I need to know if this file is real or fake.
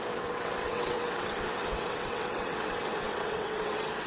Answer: fake